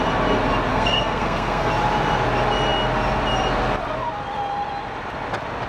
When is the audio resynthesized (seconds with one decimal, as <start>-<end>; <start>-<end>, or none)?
0.7-1.7